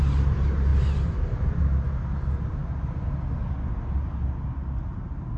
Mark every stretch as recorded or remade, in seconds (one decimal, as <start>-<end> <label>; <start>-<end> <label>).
0.0-0.7 recorded; 0.7-1.6 remade; 1.6-5.4 recorded

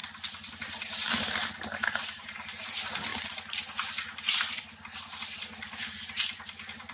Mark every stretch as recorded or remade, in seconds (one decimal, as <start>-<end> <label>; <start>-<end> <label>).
0.0-0.5 recorded; 0.5-1.1 remade; 1.1-1.9 recorded; 1.9-6.9 remade